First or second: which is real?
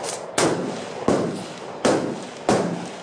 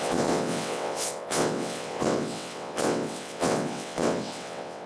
first